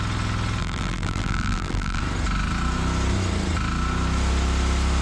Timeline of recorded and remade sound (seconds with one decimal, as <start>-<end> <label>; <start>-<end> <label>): 0.0-0.6 recorded; 0.6-2.0 remade; 2.0-5.0 recorded